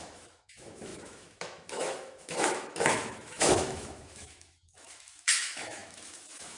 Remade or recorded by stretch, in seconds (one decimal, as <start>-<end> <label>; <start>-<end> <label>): 0.0-6.6 remade